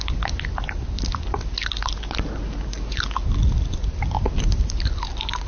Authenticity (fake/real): real